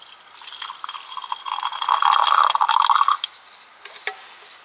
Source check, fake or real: real